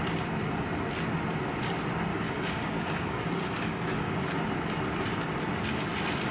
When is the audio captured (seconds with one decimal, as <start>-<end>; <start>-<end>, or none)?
0.0-2.1; 4.2-6.3